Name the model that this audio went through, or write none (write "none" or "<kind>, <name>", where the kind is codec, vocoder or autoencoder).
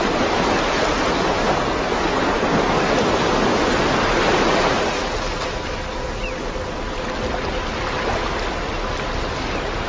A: none